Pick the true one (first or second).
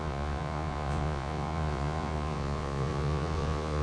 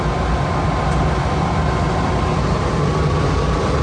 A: second